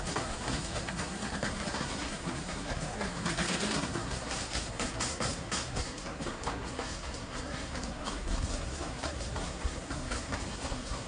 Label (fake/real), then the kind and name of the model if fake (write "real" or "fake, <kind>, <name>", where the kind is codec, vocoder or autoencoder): fake, codec, SNAC